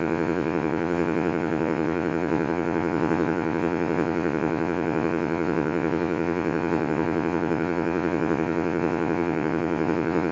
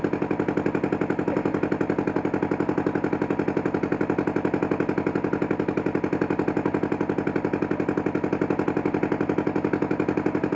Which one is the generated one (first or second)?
first